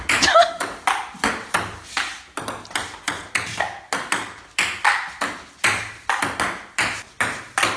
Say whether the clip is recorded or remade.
recorded